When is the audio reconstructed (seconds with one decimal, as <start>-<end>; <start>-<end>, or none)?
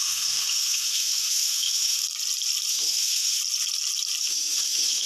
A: 0.0-2.0; 2.7-3.4; 4.2-5.1